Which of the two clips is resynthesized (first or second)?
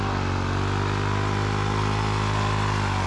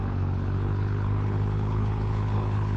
second